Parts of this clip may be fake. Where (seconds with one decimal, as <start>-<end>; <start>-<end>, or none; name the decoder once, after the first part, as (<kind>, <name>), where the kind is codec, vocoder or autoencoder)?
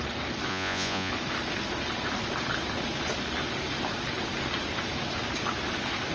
0.5-1.1 (vocoder, Vocos)